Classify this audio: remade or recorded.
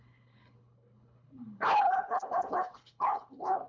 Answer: remade